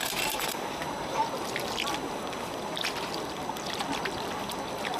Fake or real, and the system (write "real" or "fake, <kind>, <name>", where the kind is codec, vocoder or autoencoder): fake, vocoder, BigVGAN v2